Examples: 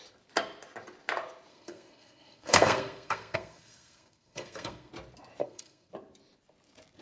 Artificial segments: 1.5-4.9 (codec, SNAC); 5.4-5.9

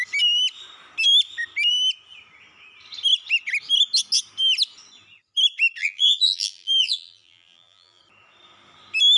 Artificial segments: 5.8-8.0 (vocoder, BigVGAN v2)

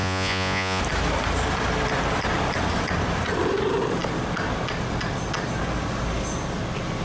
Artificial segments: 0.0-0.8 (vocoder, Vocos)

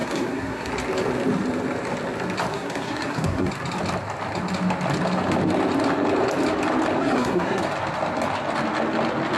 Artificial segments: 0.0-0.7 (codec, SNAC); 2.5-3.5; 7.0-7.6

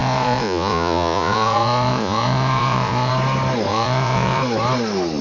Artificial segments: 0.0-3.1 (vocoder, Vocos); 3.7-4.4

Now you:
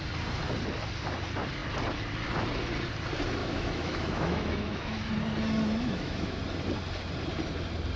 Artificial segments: 3.4-5.1 (autoencoder, DAC-VAE); 5.8-6.4

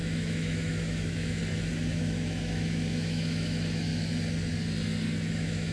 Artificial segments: 0.0-1.4 (autoencoder, DAC-VAE); 1.9-3.9; 5.3-5.7